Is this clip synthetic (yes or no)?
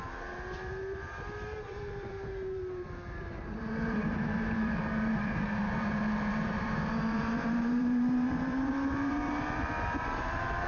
yes